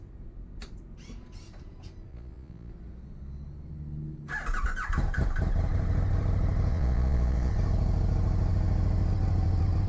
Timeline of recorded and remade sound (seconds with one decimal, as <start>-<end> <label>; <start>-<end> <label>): 0.0-2.1 recorded; 2.1-2.7 remade; 2.7-6.7 recorded; 6.7-7.5 remade; 7.5-9.9 recorded